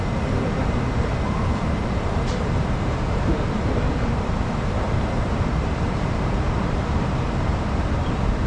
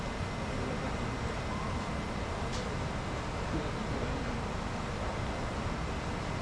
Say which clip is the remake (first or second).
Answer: first